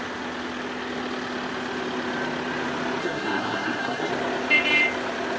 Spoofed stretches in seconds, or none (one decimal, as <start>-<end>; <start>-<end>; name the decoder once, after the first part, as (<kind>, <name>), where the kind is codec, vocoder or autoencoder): 3.0-4.1 (codec, SNAC)